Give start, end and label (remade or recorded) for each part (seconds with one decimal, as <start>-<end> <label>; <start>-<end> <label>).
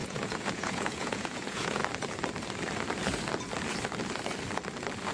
0.0-1.8 remade; 1.8-5.1 recorded